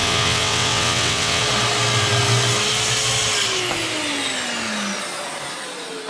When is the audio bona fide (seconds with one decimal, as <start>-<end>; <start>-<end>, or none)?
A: 1.4-6.1